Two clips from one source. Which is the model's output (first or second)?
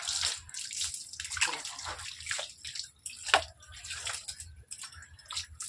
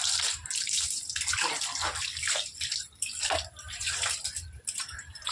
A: second